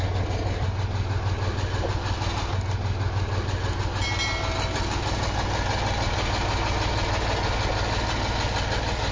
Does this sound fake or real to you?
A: real